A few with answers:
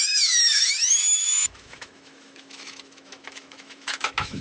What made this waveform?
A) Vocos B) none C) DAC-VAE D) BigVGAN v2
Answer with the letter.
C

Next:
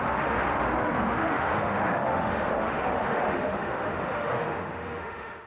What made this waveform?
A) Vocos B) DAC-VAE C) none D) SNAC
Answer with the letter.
B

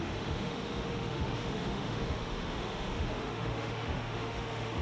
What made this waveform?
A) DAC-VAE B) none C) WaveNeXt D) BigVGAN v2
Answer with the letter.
A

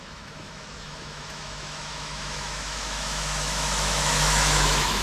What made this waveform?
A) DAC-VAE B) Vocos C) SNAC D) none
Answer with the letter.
A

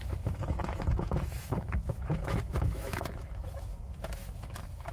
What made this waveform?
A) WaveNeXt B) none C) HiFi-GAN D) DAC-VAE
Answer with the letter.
D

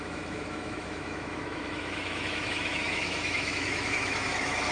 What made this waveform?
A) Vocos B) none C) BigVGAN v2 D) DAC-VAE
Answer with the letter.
D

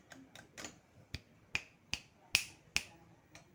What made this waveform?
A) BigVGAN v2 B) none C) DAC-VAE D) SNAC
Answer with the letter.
B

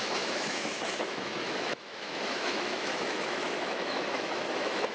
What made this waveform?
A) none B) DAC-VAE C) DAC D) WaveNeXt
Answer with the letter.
B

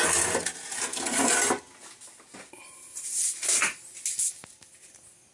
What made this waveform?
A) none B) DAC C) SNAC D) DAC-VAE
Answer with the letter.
A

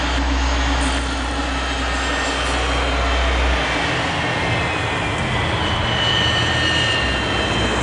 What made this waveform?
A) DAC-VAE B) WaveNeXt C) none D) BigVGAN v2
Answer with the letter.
C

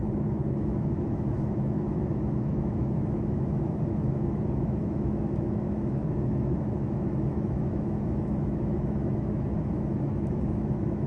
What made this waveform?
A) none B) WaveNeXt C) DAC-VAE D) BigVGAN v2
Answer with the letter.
C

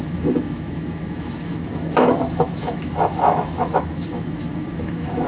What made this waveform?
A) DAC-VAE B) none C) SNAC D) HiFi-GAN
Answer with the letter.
A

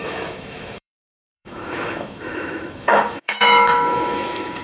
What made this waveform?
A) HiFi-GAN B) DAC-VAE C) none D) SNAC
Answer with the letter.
B